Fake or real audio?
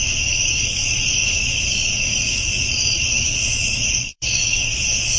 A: fake